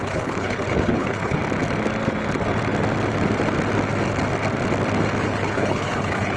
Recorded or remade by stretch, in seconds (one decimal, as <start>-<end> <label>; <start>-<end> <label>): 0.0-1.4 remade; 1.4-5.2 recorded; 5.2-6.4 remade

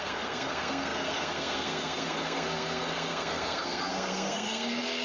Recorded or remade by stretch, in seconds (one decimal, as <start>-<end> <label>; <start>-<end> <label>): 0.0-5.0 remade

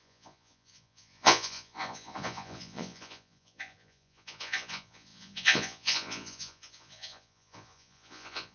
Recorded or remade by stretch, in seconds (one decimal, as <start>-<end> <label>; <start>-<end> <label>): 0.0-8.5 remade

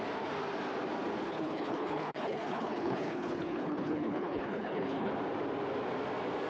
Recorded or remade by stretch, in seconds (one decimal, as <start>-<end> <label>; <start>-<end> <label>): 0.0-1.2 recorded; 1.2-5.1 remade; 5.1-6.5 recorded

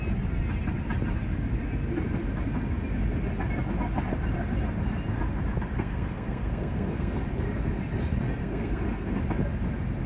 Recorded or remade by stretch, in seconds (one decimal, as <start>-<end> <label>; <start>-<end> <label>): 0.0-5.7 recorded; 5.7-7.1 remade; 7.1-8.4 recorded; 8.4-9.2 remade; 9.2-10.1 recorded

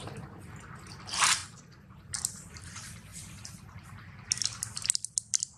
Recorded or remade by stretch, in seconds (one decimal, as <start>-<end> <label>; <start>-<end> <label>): 0.0-5.6 remade